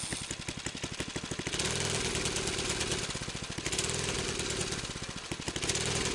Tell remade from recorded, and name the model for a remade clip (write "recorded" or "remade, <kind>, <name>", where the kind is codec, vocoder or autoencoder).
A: recorded